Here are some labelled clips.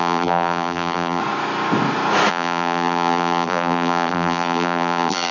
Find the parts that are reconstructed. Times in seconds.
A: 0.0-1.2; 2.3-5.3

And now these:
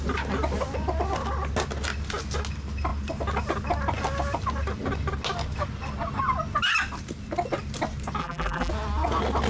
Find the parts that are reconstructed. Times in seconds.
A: 8.2-8.7

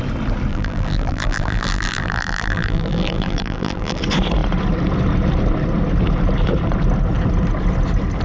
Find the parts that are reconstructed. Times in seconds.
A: 0.5-4.0

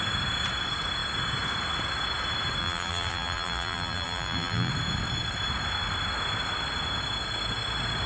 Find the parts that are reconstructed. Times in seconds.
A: 2.6-4.7

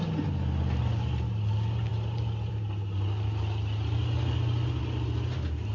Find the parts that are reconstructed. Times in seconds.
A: none

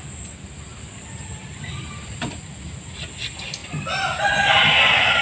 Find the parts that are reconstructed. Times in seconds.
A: 0.7-2.1; 3.6-4.3